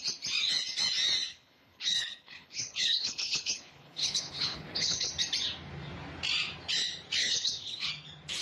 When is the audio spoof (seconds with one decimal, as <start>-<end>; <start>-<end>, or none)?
1.3-5.1; 7.2-7.9